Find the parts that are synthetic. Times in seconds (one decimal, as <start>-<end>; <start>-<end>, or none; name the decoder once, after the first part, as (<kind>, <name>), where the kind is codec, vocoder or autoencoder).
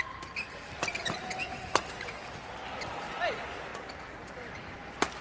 none